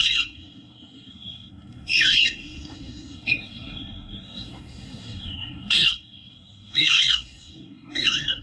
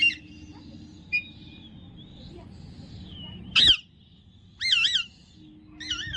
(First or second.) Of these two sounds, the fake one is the first